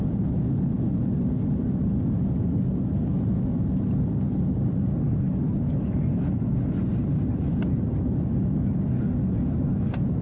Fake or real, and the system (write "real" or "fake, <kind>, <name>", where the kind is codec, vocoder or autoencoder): real